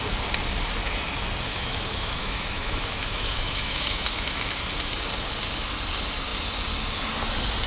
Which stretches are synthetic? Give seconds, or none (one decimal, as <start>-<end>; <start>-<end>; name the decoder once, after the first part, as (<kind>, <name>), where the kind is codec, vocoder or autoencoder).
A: 1.5-4.6 (autoencoder, DAC-VAE)